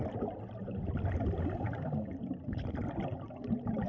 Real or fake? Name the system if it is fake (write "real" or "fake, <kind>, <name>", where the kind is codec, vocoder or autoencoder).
real